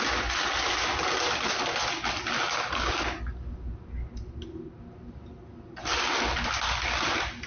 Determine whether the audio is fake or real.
real